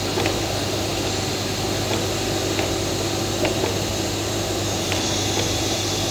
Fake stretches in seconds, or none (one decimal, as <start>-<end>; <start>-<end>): 3.9-6.1